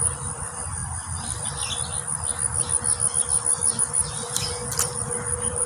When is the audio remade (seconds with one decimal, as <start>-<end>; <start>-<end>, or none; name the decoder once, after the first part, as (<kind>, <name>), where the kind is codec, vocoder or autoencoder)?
0.0-0.8 (vocoder, BigVGAN v2); 3.8-5.7

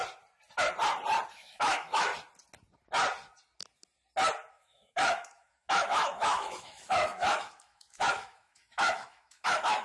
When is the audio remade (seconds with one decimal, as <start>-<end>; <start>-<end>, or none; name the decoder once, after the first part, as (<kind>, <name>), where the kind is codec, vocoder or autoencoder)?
1.3-2.1 (autoencoder, DAC-VAE); 4.5-9.8

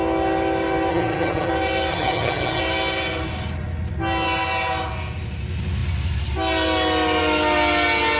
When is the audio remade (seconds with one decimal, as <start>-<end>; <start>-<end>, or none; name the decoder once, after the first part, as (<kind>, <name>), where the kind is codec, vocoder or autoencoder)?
0.9-1.5 (vocoder, HiFi-GAN); 1.9-2.6

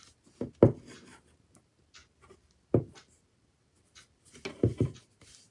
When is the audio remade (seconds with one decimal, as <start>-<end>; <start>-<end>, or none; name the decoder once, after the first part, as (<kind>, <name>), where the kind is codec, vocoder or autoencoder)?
none